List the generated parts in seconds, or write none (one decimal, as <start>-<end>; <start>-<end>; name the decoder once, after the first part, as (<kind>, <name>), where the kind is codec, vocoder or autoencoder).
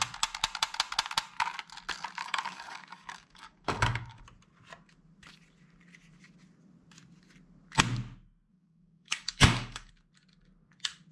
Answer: 2.2-4.2 (codec, DAC); 8.5-9.9